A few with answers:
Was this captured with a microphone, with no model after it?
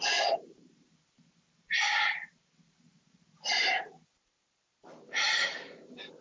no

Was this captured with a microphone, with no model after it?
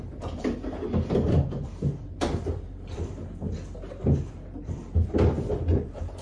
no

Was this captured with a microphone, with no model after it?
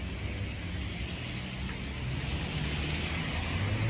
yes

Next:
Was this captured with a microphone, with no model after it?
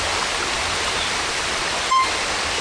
no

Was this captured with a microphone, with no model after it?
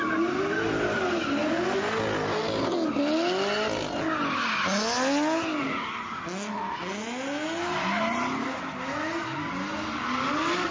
yes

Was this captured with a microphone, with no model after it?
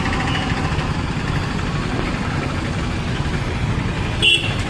yes